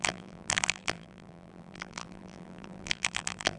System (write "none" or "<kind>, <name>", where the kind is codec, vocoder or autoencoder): vocoder, BigVGAN v2